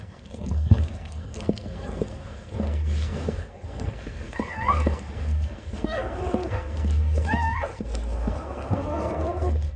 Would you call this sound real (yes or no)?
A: no